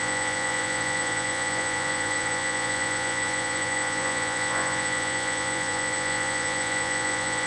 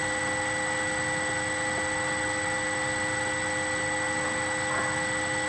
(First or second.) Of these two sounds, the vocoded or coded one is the first